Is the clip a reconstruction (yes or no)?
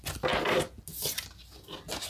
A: no